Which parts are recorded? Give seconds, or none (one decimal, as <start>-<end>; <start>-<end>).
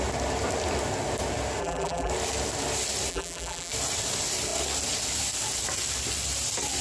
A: 0.0-1.6; 2.1-3.1; 3.7-6.8